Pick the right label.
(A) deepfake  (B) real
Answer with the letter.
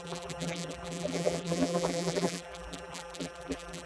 A